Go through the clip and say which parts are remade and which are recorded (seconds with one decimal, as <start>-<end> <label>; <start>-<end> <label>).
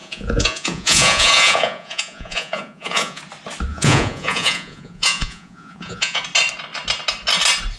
0.0-3.2 remade; 3.2-3.7 recorded; 3.7-6.2 remade; 6.2-7.8 recorded